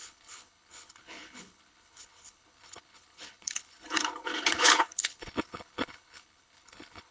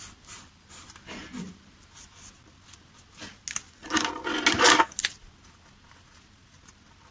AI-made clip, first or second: first